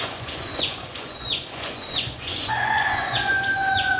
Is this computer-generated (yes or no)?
yes